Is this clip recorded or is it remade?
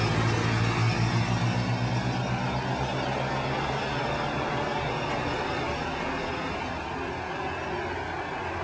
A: recorded